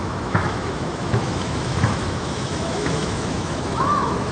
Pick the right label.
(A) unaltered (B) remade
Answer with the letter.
B